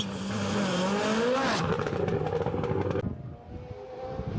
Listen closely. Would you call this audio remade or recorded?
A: recorded